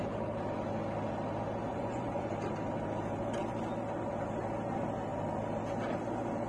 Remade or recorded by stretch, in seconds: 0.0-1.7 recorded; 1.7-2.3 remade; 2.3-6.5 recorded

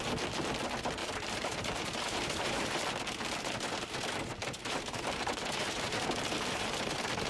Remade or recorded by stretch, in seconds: 0.0-1.0 recorded; 1.0-2.8 remade; 2.8-4.4 recorded; 4.4-7.3 remade

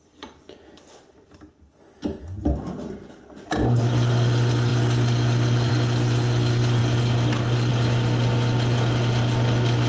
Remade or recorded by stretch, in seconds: 0.0-9.9 recorded

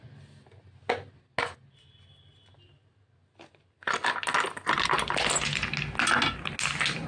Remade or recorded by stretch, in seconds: 0.0-7.1 recorded

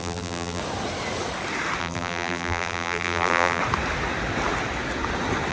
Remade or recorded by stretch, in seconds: 0.0-0.6 remade; 0.6-1.8 recorded; 1.8-3.6 remade; 3.6-5.5 recorded

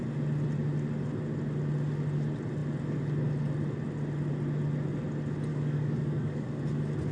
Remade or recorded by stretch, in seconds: 0.0-5.5 recorded; 5.5-6.6 remade; 6.6-7.1 recorded